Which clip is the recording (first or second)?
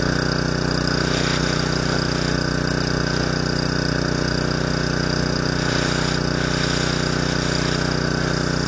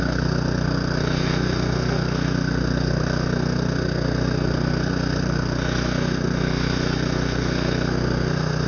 first